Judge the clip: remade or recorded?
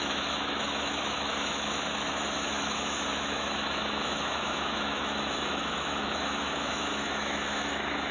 remade